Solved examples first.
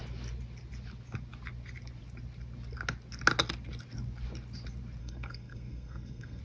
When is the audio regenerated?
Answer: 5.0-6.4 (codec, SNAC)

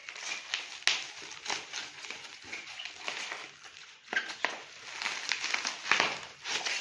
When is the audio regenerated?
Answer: 1.8-2.9 (vocoder, Vocos); 3.8-4.7

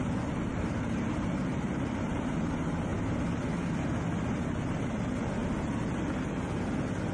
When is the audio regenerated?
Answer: 0.5-2.4 (vocoder, BigVGAN v2); 5.4-6.0